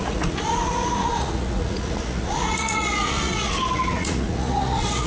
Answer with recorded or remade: remade